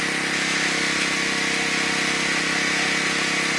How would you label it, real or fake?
real